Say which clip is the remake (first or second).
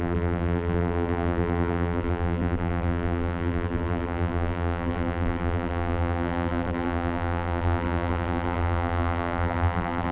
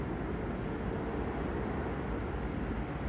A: first